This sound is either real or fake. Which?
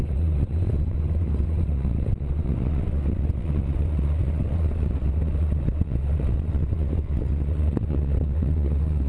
fake